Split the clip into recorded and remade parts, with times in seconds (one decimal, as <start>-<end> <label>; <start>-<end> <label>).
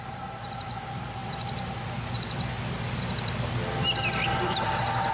0.0-5.1 recorded